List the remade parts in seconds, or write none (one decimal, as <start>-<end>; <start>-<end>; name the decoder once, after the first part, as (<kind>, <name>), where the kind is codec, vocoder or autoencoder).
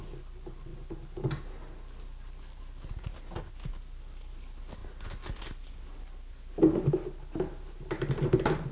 none